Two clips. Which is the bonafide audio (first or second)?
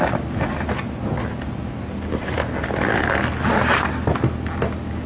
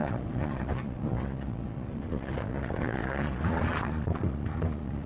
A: first